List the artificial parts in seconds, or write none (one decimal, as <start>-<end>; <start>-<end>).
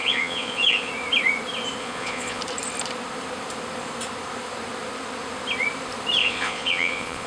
0.0-0.9; 1.8-2.4; 6.2-7.3